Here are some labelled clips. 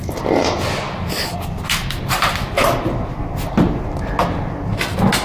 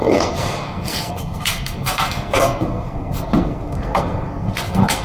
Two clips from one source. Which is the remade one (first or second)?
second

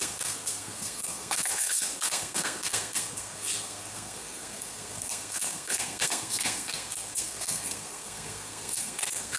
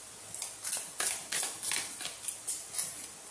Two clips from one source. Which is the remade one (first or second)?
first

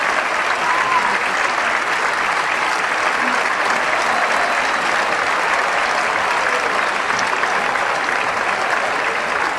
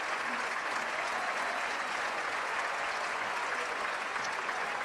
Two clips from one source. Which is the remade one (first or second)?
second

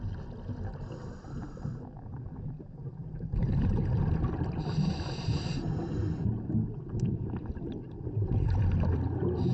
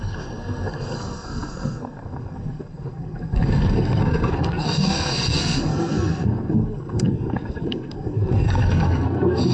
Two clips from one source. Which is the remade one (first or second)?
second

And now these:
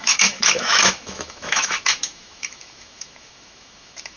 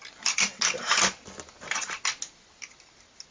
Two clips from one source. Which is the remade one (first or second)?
first